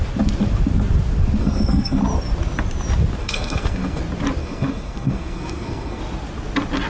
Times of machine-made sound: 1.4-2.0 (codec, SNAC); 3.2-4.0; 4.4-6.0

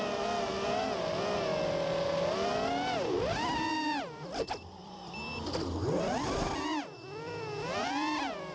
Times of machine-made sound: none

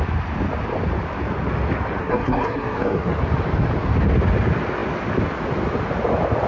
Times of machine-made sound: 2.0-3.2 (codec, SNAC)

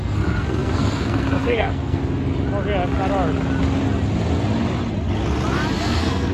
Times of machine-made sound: 0.0-2.0 (codec, SNAC); 5.8-6.3